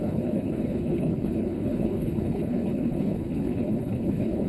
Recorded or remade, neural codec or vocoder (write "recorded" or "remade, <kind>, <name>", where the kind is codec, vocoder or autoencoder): remade, codec, HILCodec